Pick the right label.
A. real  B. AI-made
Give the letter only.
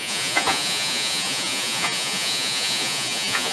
B